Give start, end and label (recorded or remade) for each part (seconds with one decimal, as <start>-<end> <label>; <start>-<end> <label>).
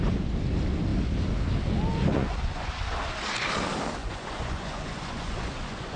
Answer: 0.0-2.1 recorded; 2.1-2.8 remade; 2.8-4.0 recorded; 4.0-6.0 remade